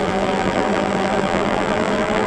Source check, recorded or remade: remade